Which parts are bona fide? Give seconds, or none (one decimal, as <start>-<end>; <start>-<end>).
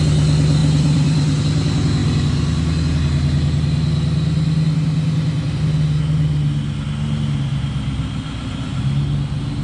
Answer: 0.0-0.6; 1.4-9.6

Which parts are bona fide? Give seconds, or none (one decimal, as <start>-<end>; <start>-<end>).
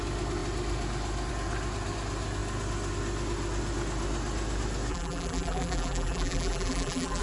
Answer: 0.0-4.9